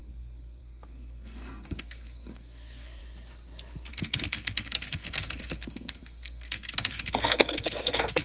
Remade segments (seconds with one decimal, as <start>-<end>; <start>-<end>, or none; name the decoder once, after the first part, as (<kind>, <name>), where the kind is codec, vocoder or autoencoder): 0.0-3.0 (codec, SNAC); 3.9-8.2